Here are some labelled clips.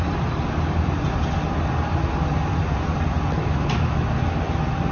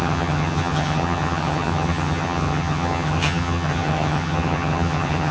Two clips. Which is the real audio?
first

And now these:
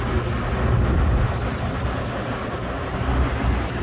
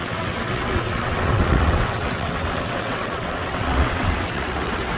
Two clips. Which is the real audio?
first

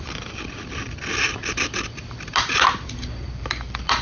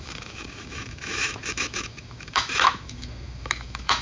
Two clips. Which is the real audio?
first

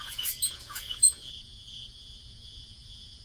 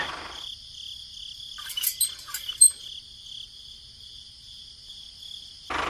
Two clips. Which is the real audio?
second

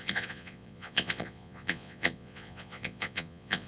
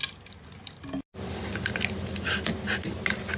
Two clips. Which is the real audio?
second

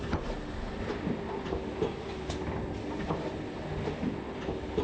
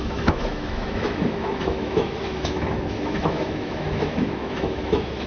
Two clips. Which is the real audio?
first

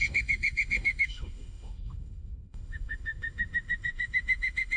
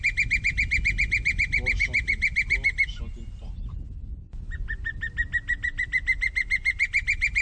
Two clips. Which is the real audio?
second